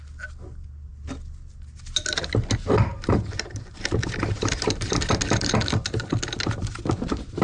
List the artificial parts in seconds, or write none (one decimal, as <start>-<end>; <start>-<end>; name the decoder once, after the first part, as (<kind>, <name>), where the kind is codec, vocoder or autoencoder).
2.9-4.9 (vocoder, BigVGAN v2)